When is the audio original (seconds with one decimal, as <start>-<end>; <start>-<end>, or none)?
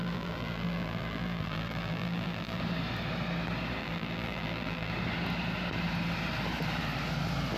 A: 2.6-3.8; 4.9-7.6